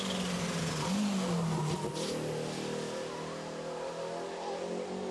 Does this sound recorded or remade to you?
recorded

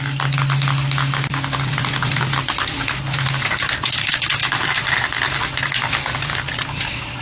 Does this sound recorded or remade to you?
recorded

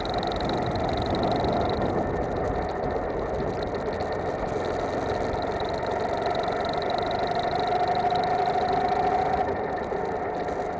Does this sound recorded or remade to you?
recorded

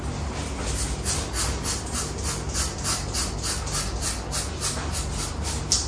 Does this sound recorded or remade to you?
recorded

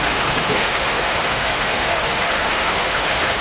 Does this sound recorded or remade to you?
remade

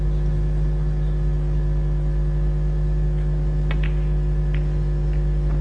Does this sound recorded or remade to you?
recorded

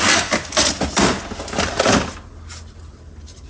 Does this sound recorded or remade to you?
recorded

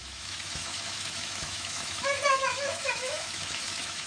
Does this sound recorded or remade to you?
remade